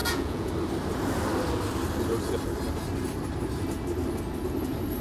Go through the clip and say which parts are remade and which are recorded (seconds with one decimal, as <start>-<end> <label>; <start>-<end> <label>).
0.0-0.5 remade; 0.5-5.0 recorded